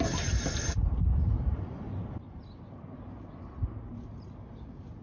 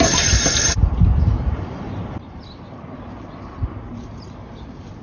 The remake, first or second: second